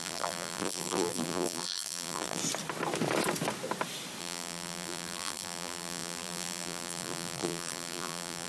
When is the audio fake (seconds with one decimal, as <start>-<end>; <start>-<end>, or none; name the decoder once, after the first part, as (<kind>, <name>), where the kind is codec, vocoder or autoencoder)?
0.0-2.4 (vocoder, BigVGAN v2); 4.2-8.5